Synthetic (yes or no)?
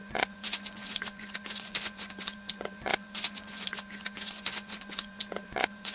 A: yes